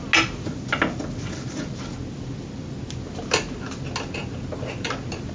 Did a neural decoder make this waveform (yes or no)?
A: no